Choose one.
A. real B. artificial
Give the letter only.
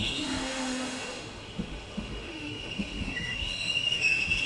B